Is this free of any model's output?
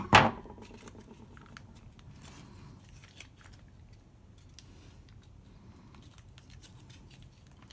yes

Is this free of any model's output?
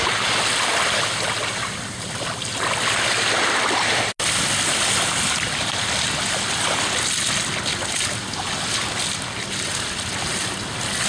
yes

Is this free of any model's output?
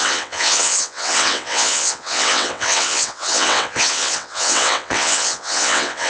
no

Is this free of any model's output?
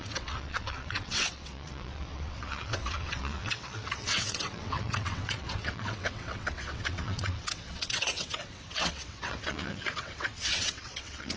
no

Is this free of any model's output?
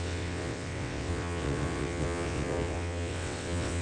no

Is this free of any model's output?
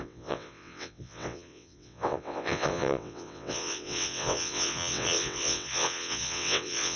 no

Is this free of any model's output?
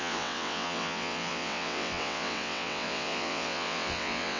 no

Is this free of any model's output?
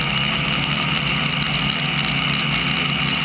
yes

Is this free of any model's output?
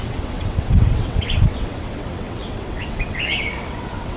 no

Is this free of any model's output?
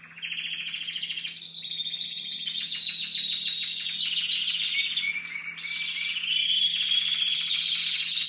yes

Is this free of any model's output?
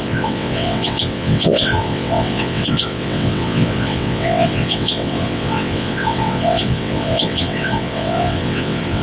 no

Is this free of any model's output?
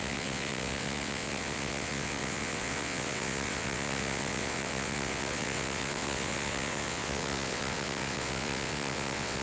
no